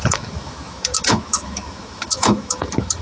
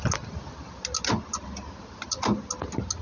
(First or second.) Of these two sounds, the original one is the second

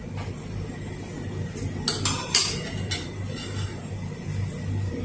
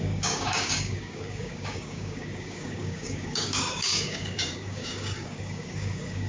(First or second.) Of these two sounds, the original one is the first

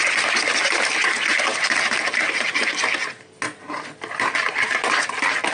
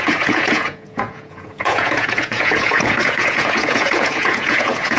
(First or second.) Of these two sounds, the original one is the first